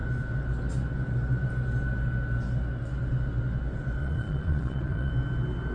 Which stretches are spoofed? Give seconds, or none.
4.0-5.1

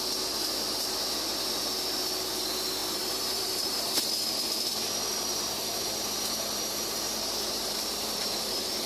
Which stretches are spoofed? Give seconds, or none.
2.8-4.1; 5.1-8.9